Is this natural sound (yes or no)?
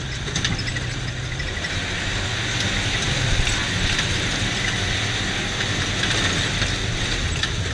yes